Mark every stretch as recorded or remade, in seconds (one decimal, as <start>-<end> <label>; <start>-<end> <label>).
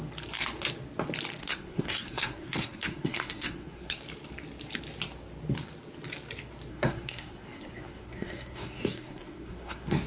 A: 0.0-1.4 recorded; 1.4-4.0 remade; 4.0-6.7 recorded; 6.7-10.1 remade